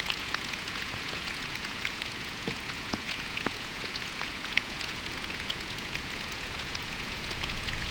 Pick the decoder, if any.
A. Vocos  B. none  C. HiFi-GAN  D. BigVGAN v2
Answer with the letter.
A